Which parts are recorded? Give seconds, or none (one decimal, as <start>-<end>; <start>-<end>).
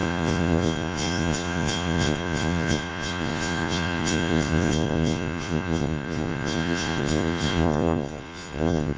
none